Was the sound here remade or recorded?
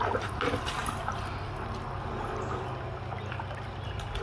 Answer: recorded